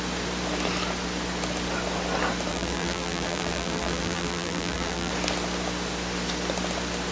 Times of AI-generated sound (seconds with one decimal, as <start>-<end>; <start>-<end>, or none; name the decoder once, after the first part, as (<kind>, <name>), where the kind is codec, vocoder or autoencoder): 2.5-5.1 (vocoder, BigVGAN v2)